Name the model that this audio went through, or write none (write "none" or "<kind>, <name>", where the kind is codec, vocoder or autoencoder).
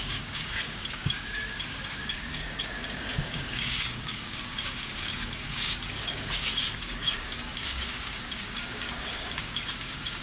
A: codec, DAC